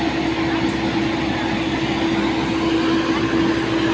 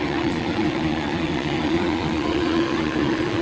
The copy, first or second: second